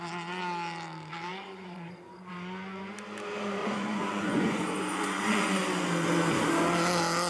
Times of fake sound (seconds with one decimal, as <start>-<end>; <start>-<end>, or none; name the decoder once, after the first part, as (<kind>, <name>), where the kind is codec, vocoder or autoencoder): 1.3-2.3 (vocoder, Vocos); 3.6-5.6